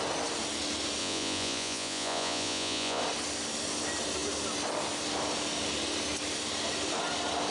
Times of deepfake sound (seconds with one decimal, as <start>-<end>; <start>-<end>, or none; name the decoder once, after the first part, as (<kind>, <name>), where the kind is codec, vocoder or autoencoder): 1.0-3.0 (vocoder, Vocos)